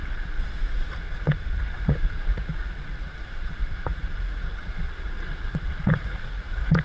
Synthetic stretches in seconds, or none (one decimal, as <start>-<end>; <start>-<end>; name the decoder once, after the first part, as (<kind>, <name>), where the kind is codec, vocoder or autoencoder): 0.9-6.8 (vocoder, Vocos)